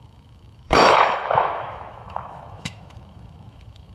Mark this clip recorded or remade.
remade